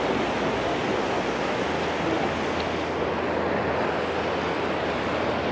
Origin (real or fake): real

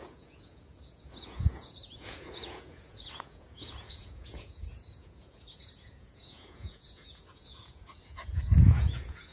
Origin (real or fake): fake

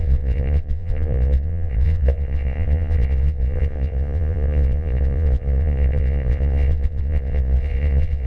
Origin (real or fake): fake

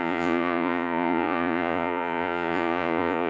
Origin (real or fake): fake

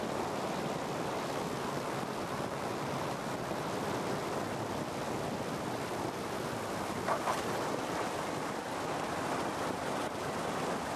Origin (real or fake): real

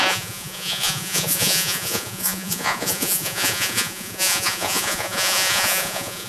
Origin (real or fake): fake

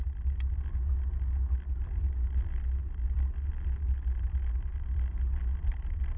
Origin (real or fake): real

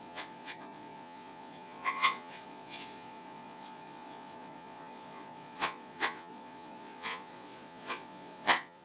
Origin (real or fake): fake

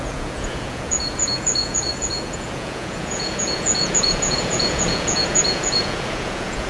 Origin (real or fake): fake